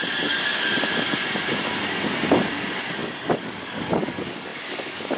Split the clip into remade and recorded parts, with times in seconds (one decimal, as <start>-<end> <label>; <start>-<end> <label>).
0.0-0.7 remade; 0.7-2.5 recorded; 2.5-5.2 remade